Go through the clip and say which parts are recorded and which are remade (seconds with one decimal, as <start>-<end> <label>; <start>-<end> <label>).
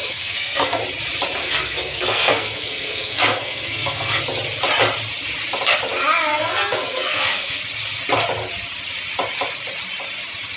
0.0-0.8 remade; 0.8-1.4 recorded; 1.4-4.2 remade; 4.2-6.3 recorded; 6.3-7.6 remade; 7.6-10.6 recorded